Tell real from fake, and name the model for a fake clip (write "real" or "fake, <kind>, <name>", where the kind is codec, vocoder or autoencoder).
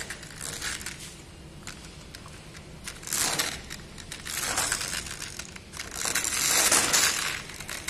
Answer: real